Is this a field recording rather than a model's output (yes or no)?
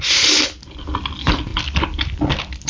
yes